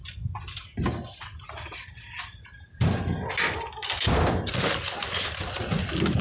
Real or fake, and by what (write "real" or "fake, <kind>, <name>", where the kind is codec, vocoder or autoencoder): real